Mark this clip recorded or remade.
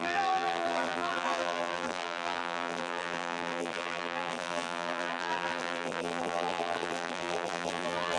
remade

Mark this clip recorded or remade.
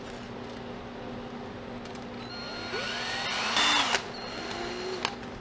recorded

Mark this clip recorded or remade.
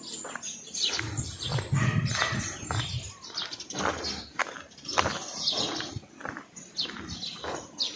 recorded